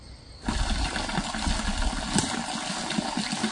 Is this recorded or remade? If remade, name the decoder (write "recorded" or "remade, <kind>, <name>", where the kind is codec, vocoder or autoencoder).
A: recorded